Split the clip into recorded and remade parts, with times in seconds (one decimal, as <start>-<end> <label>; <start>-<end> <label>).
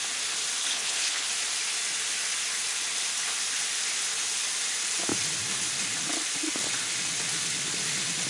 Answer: 0.0-0.6 recorded; 0.6-1.3 remade; 1.3-8.3 recorded